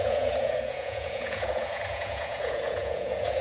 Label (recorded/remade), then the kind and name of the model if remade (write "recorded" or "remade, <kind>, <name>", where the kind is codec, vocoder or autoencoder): remade, vocoder, Vocos